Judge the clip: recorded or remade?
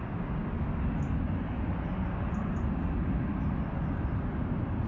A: recorded